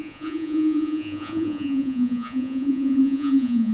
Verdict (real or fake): fake